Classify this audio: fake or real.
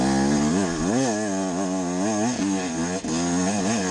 real